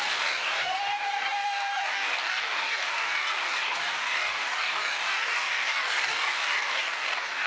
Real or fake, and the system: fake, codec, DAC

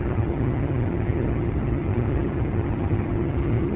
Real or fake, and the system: fake, vocoder, HiFi-GAN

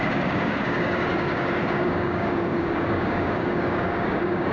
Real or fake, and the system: fake, codec, DAC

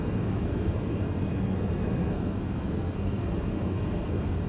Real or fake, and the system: fake, codec, SNAC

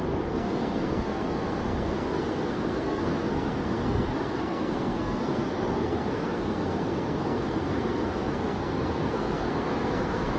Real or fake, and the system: fake, codec, SNAC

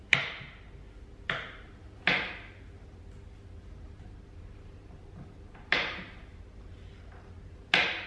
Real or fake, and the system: real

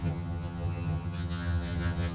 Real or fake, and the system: fake, vocoder, HiFi-GAN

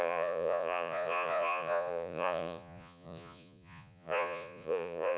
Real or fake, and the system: fake, vocoder, Vocos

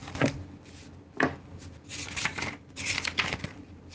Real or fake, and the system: real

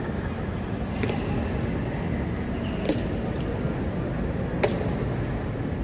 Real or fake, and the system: real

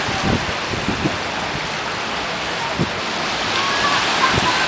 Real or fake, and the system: real